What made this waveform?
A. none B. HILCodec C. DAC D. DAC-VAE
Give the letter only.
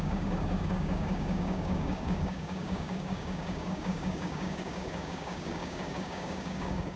C